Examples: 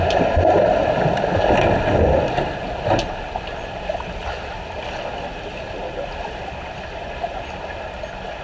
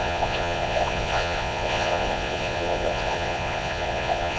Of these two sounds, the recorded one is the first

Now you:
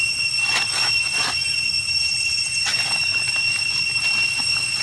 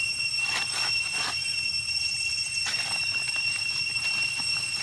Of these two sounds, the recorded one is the first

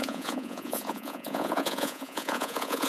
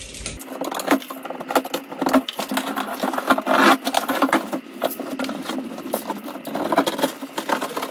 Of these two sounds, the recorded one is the second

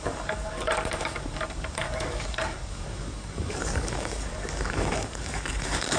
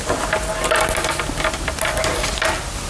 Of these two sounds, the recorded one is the second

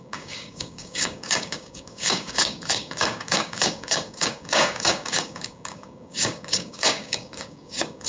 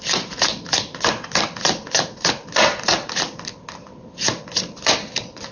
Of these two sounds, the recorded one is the second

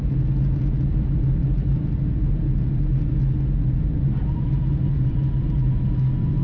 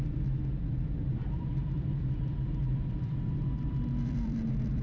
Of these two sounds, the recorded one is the first